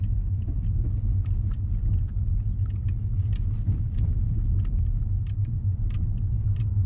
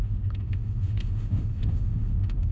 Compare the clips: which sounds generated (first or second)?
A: second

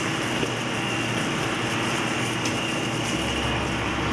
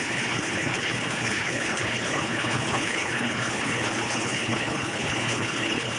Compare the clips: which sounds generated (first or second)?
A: second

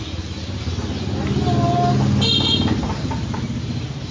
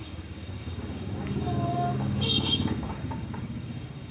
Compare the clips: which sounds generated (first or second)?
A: second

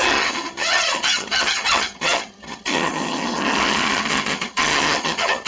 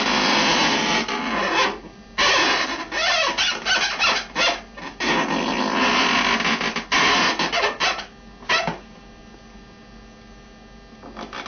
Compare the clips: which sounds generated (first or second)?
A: first